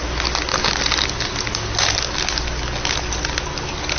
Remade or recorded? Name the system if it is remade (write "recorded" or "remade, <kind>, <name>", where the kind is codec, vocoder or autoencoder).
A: recorded